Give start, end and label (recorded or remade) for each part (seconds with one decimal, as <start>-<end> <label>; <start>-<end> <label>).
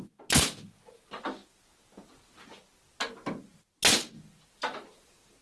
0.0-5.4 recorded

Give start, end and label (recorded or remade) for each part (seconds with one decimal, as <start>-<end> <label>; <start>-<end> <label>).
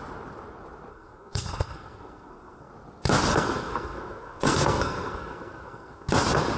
0.0-0.9 recorded; 0.9-2.7 remade; 2.7-3.3 recorded; 3.3-6.1 remade; 6.1-6.6 recorded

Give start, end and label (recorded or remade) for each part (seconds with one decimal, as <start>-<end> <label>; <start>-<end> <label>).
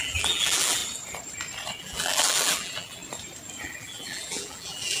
0.0-0.8 remade; 0.8-1.8 recorded; 1.8-3.0 remade; 3.0-3.6 recorded; 3.6-5.0 remade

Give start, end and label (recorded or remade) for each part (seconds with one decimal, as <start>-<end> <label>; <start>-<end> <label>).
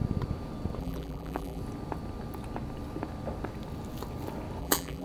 0.0-0.8 recorded; 0.8-1.6 remade; 1.6-4.6 recorded; 4.6-5.0 remade